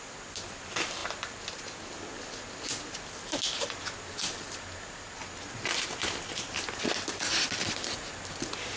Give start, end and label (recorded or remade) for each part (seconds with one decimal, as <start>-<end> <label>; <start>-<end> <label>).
0.0-8.8 recorded